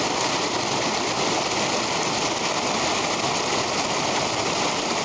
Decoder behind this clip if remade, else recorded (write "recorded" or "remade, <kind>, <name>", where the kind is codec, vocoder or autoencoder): recorded